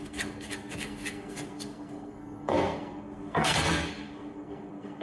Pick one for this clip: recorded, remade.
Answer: remade